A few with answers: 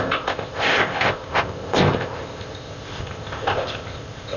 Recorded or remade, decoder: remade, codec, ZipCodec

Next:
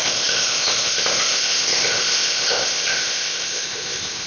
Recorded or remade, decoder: remade, codec, ZipCodec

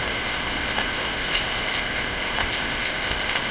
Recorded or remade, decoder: remade, codec, ZipCodec